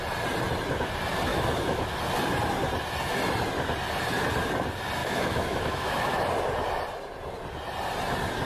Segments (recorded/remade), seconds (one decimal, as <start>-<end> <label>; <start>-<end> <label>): 0.0-1.3 recorded; 1.3-2.0 remade; 2.0-5.0 recorded; 5.0-6.3 remade; 6.3-8.5 recorded

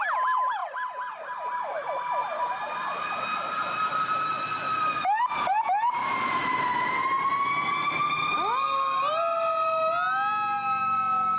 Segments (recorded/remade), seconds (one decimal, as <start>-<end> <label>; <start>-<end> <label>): 0.0-11.4 recorded

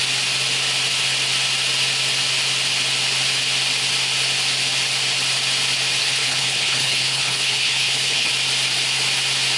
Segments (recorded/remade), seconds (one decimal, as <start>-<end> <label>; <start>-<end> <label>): 0.0-6.0 recorded; 6.0-8.3 remade; 8.3-9.6 recorded

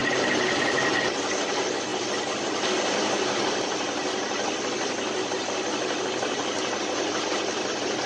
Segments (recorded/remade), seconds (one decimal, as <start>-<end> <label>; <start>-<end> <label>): 0.0-8.1 recorded

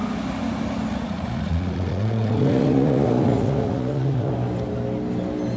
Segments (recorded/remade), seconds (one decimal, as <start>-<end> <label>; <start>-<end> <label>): 0.0-0.9 recorded; 0.9-4.3 remade; 4.3-5.6 recorded